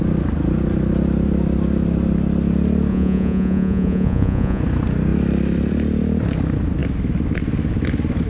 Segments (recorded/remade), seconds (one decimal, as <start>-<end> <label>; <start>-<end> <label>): 0.0-2.9 recorded; 2.9-4.6 remade; 4.6-8.3 recorded